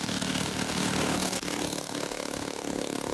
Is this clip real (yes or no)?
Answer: no